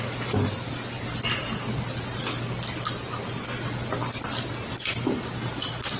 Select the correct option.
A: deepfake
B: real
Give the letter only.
B